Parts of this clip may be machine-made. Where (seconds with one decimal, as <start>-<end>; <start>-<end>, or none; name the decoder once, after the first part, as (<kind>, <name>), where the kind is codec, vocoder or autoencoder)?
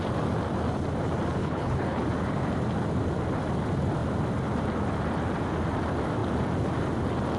1.4-2.0 (codec, HILCodec)